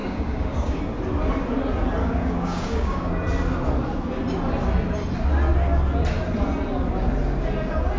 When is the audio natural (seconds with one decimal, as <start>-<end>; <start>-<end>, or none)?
0.8-2.0; 3.1-8.0